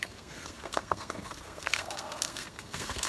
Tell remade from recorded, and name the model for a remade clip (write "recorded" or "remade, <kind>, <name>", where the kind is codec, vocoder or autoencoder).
remade, codec, SNAC